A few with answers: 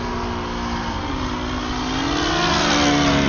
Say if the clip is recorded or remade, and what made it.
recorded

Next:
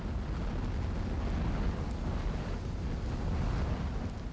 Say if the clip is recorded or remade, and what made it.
recorded